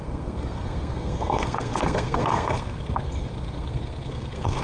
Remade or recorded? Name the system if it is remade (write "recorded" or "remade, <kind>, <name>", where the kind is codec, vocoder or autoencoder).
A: remade, codec, SNAC